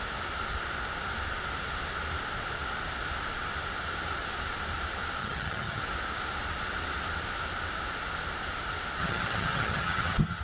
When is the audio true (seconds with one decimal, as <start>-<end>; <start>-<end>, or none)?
0.0-5.2; 5.8-9.0